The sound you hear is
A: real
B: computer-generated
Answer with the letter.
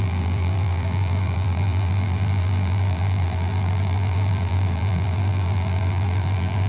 B